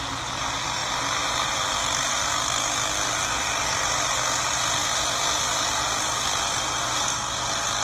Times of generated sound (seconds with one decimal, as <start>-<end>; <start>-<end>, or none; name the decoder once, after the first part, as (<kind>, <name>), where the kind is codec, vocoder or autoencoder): 0.8-1.5 (vocoder, BigVGAN v2)